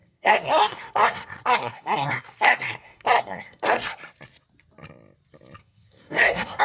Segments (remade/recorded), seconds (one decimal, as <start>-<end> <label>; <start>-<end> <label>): 0.0-4.0 remade; 4.0-5.6 recorded; 5.6-6.6 remade